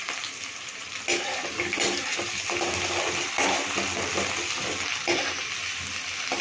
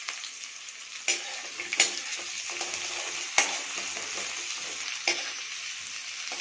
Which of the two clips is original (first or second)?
second